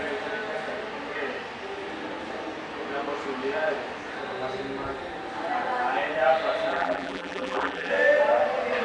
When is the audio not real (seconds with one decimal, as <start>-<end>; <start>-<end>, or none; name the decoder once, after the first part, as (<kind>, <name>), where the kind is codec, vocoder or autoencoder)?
6.7-7.9 (vocoder, BigVGAN v2)